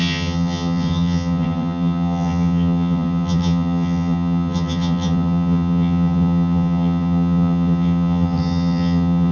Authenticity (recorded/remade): remade